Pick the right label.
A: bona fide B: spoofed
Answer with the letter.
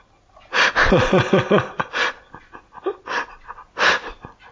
A